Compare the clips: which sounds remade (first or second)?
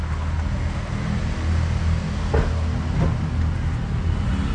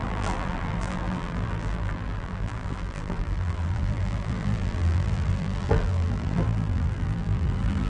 second